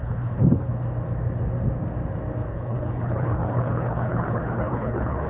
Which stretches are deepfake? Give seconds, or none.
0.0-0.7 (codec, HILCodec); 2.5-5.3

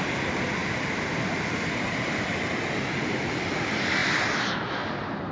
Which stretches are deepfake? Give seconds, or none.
none